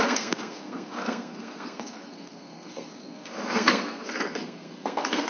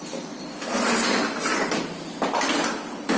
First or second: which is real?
second